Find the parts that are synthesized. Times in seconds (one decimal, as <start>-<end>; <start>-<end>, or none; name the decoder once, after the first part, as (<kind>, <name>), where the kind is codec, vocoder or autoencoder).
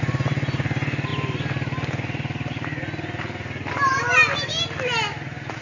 none